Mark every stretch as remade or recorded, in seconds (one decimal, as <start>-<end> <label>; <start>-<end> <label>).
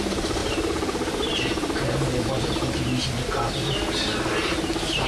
0.0-5.1 recorded